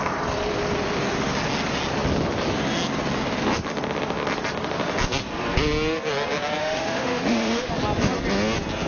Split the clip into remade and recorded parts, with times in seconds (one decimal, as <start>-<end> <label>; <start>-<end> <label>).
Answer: 0.0-6.6 recorded; 6.6-7.7 remade; 7.7-8.9 recorded